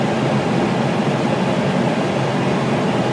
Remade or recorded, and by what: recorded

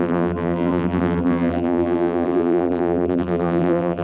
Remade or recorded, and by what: remade, vocoder, BigVGAN v2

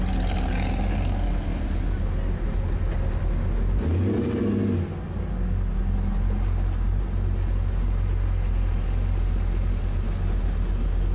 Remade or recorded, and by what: recorded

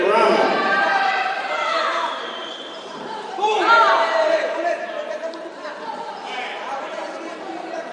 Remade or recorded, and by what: remade, vocoder, BigVGAN v2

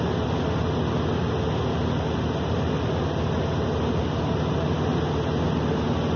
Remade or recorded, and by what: recorded